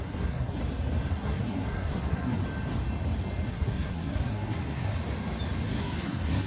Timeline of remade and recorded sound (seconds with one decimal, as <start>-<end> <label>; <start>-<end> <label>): 0.0-0.6 remade; 0.6-1.1 recorded; 1.1-2.4 remade; 2.4-3.5 recorded; 3.5-4.9 remade; 4.9-5.7 recorded; 5.7-6.5 remade